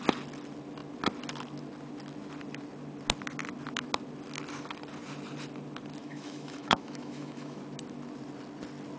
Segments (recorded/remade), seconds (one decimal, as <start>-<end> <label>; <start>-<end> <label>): 0.0-6.0 recorded; 6.0-7.6 remade; 7.6-9.0 recorded